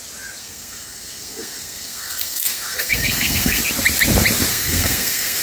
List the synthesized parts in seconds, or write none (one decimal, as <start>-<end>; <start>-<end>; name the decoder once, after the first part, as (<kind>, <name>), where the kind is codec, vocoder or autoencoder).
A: 0.4-3.6 (codec, SNAC); 4.5-5.4